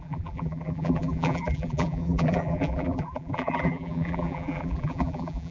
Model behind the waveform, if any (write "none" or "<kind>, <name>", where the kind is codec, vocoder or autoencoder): vocoder, BigVGAN v2